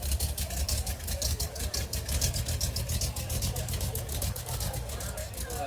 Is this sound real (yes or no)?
no